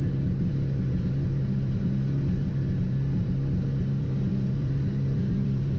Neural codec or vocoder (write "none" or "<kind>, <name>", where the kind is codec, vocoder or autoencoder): vocoder, BigVGAN v2